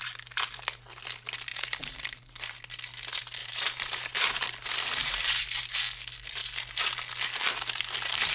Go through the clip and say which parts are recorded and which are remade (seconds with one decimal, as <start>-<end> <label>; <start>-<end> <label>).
0.0-1.5 recorded; 1.5-2.6 remade; 2.6-3.4 recorded; 3.4-4.4 remade; 4.4-5.0 recorded; 5.0-5.6 remade; 5.6-8.3 recorded